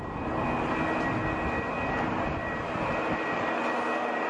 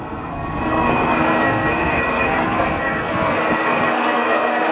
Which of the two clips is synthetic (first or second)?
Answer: second